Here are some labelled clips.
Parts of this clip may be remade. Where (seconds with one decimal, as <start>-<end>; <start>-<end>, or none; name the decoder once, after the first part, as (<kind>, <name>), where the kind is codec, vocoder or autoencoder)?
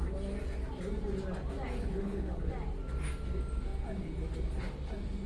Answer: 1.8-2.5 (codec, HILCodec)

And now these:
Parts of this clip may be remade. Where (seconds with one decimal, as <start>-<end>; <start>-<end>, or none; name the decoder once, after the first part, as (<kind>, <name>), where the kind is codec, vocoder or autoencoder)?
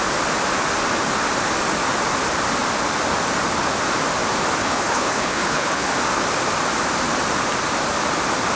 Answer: 4.6-5.9 (codec, HILCodec)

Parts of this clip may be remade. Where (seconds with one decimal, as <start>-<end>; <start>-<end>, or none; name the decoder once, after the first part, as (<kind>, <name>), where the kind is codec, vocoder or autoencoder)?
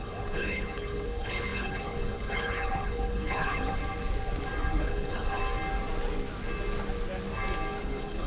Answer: 0.0-3.8 (codec, HILCodec); 4.7-5.4; 7.8-8.3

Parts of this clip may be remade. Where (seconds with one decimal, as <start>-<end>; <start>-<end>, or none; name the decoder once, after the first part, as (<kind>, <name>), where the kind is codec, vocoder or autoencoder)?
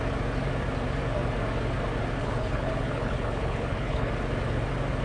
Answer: 2.2-4.1 (codec, HILCodec)